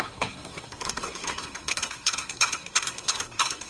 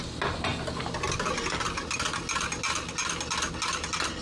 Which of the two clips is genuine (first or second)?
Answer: second